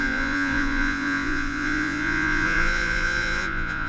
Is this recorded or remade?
remade